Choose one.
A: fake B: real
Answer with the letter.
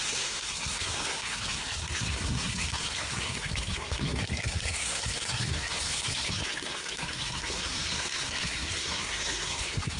A